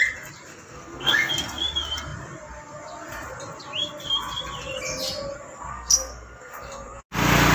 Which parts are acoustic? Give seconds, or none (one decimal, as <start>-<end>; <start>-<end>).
0.0-0.5; 1.3-5.7; 7.0-7.5